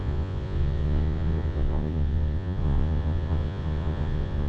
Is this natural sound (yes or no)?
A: no